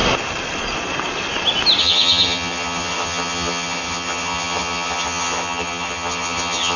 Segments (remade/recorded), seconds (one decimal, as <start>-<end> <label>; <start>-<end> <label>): 0.0-1.8 recorded; 1.8-6.8 remade